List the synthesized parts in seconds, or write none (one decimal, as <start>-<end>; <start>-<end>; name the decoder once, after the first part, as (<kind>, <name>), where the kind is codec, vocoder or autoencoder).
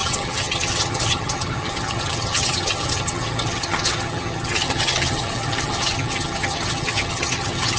0.0-7.8 (vocoder, HiFi-GAN)